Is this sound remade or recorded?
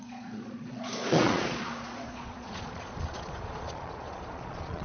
remade